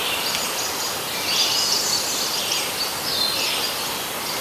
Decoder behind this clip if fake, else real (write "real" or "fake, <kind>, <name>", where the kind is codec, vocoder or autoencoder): real